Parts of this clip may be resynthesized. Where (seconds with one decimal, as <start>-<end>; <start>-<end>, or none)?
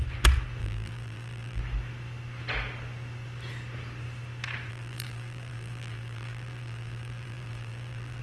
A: 0.6-1.6; 4.7-8.2